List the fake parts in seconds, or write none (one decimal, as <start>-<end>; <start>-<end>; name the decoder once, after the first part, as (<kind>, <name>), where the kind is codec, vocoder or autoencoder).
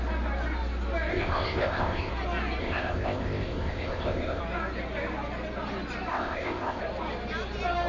1.1-2.1 (codec, ZipCodec); 2.6-4.4; 6.1-6.8